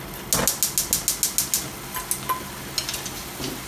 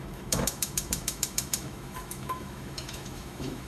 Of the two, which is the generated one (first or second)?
second